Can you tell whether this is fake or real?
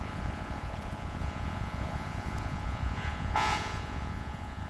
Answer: fake